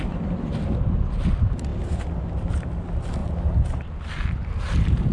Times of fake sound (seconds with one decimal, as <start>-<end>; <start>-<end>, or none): none